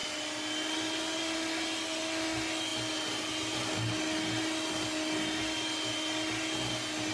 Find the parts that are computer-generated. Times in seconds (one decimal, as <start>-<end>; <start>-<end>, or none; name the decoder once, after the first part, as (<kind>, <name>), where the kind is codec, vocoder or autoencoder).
none